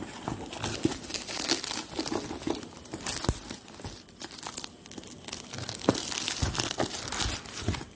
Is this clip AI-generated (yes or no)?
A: no